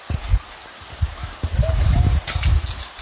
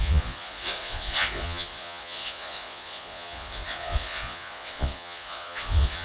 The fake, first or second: second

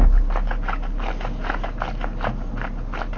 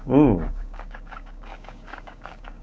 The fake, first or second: second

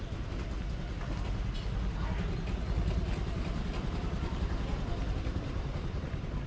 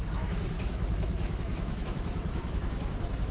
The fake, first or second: second